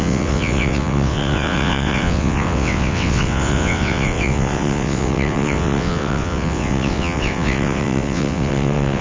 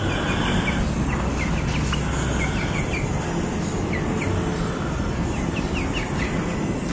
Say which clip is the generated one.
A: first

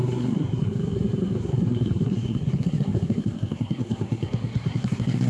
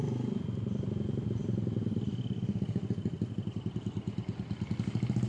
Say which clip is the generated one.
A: first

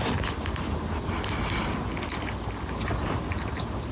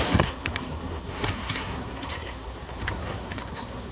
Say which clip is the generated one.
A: second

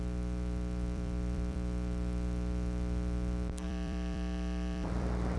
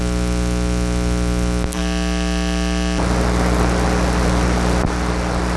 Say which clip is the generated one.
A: first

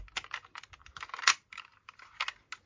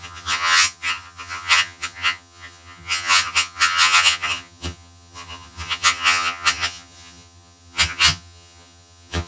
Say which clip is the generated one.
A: second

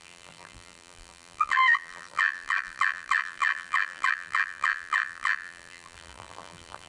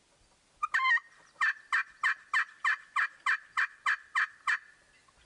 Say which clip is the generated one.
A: first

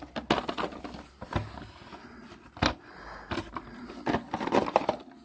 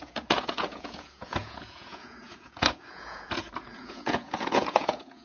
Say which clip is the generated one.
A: second